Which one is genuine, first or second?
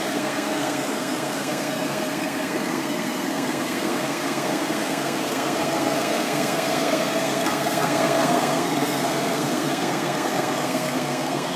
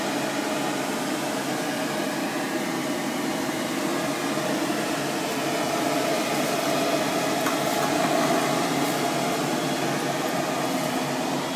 second